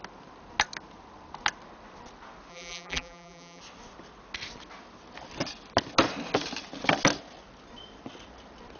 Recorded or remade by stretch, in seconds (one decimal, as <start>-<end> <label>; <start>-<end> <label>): 0.0-2.5 recorded; 2.5-3.6 remade; 3.6-8.8 recorded